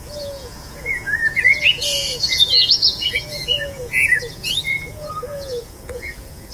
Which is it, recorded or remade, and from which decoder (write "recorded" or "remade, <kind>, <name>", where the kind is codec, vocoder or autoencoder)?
remade, vocoder, Vocos